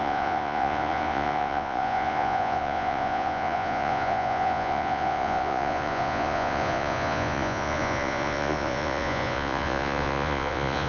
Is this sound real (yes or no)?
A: no